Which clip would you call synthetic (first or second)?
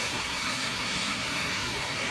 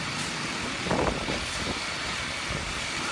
first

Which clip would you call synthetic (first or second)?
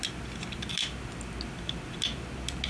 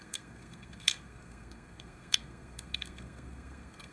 second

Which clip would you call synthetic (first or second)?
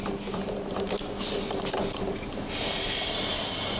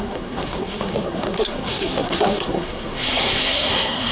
second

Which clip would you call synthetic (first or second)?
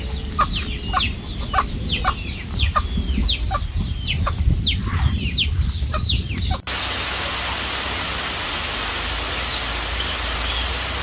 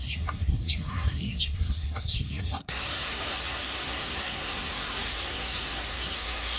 second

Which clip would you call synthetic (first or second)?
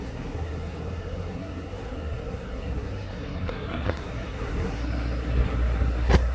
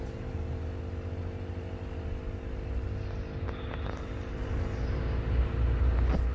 first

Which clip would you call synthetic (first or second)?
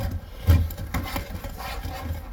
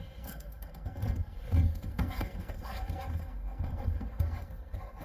second